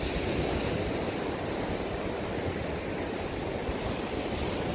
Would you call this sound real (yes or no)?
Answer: yes